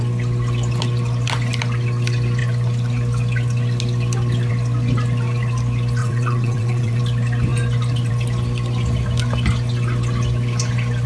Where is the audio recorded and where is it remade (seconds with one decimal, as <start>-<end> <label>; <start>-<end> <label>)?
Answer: 0.0-6.0 recorded; 6.0-7.0 remade; 7.0-11.1 recorded